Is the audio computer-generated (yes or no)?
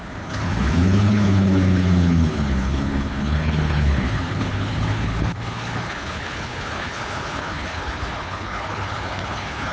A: yes